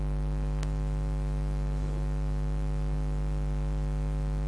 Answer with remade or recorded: recorded